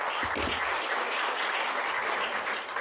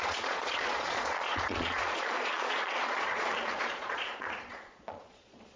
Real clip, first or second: first